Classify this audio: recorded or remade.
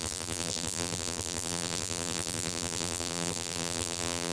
remade